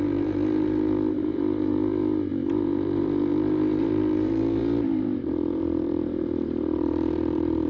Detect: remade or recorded remade